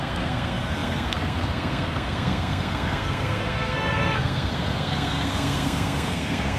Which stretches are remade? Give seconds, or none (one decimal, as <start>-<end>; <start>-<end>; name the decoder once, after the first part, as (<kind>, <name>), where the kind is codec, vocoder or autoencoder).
0.0-6.6 (codec, SNAC)